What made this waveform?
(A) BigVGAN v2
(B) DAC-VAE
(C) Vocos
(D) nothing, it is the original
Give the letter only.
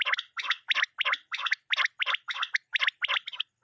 A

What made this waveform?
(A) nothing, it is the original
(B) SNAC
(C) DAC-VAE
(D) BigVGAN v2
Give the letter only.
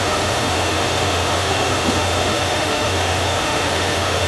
C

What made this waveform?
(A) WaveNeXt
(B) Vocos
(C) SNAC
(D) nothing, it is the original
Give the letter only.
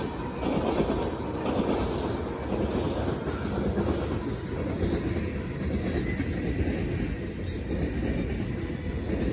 D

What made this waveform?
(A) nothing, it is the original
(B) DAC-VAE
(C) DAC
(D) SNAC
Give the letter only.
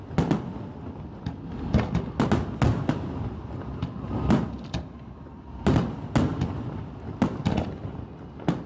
A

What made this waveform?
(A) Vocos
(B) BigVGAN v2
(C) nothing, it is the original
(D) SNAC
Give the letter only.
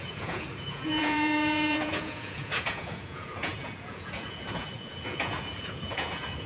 A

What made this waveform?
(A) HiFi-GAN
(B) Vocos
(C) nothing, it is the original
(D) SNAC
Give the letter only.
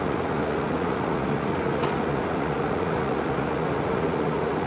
B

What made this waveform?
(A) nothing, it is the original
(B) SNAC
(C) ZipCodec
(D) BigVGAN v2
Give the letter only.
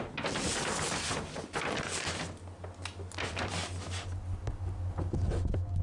A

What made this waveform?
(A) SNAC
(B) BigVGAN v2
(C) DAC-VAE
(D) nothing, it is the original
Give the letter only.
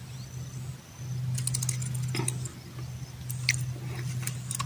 D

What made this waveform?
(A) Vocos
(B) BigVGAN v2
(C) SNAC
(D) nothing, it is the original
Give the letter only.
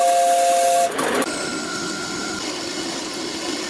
D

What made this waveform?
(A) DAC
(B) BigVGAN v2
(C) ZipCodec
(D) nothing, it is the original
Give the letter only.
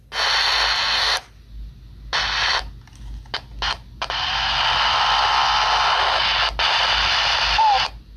D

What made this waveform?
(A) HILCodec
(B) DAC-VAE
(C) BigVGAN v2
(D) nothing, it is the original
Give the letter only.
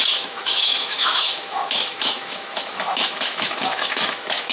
B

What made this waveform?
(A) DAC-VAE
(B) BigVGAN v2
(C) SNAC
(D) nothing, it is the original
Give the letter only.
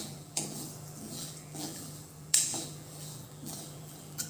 B